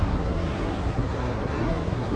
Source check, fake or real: fake